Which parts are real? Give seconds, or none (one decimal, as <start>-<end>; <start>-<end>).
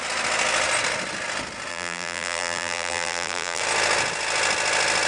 0.0-1.7; 3.6-5.1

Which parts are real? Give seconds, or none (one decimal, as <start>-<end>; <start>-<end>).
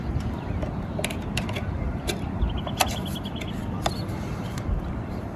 3.6-4.1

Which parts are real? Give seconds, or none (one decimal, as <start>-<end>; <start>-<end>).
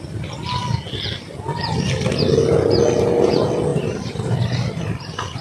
0.0-3.7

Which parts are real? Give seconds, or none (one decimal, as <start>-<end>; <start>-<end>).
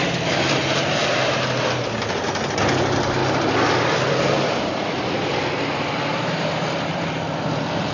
0.6-2.8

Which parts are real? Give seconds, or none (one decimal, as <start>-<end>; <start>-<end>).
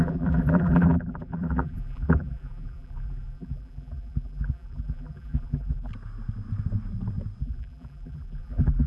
5.9-7.4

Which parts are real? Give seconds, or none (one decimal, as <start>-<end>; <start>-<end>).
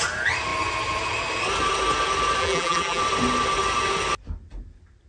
0.0-2.4; 3.0-5.1